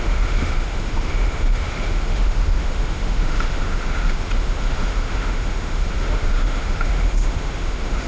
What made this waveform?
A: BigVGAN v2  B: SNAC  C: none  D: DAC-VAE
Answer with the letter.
D